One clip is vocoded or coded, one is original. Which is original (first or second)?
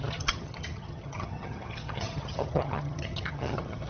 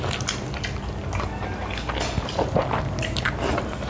second